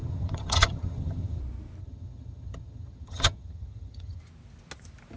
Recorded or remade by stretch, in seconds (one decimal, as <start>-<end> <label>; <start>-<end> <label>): 0.0-1.4 remade; 1.4-1.8 recorded; 1.8-4.2 remade; 4.2-5.2 recorded